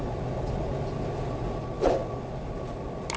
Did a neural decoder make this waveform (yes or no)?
no